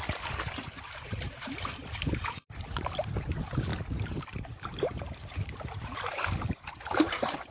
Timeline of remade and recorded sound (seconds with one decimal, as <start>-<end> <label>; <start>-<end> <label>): 0.0-7.5 remade